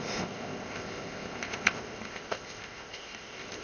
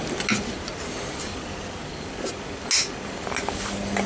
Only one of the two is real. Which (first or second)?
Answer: second